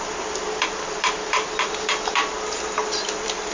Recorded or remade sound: remade